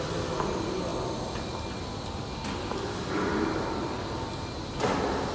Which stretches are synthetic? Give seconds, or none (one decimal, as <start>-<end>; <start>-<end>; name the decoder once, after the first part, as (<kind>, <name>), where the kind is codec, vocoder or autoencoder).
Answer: none